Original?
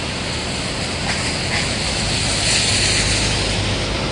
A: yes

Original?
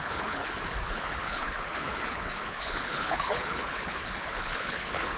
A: no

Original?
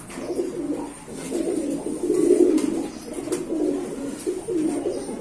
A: yes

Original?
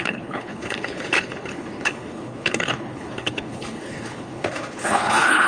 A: no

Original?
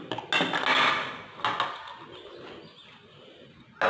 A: yes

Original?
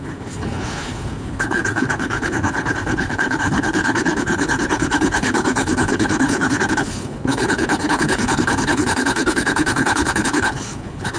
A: no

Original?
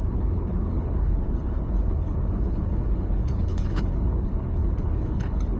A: no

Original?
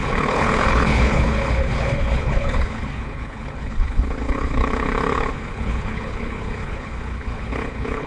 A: no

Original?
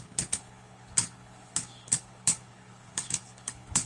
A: no